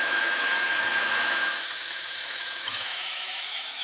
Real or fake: fake